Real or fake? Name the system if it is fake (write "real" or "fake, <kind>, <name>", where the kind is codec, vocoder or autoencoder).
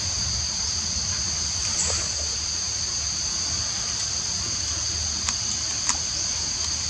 real